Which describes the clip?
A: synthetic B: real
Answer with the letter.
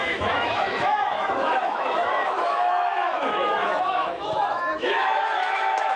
A